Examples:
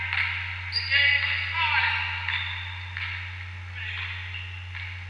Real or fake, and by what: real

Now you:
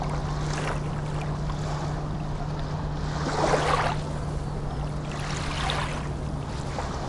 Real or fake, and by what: real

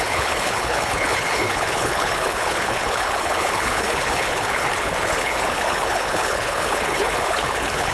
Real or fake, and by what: fake, codec, HILCodec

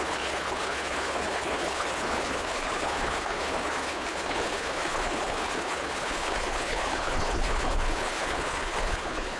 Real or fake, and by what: fake, codec, HILCodec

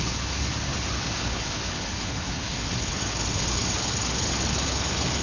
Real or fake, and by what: fake, codec, HILCodec